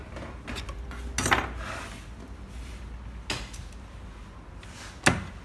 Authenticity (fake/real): real